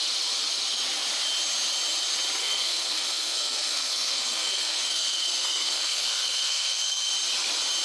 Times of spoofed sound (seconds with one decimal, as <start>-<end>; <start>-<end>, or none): 2.4-7.1